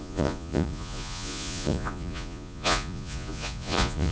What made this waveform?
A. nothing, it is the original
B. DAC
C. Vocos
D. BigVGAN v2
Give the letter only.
C